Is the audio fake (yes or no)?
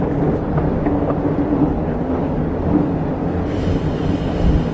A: no